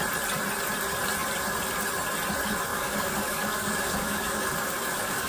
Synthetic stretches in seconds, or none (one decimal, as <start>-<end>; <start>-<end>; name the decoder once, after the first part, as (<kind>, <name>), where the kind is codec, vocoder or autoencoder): 2.7-5.3 (codec, DAC)